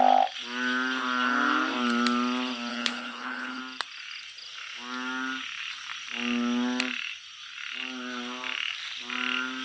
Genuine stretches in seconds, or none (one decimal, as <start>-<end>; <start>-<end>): 0.0-2.7; 3.6-9.6